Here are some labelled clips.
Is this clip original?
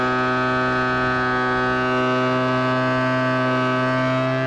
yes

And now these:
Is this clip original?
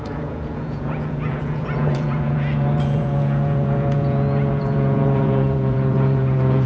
no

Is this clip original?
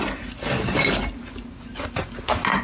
yes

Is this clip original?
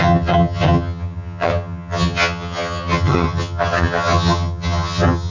no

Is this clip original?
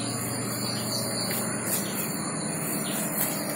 yes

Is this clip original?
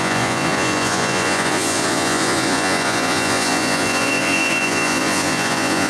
no